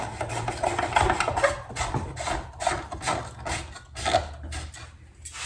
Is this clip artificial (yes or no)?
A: no